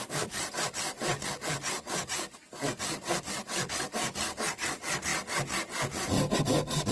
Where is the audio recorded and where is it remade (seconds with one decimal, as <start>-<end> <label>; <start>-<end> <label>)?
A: 0.0-6.9 recorded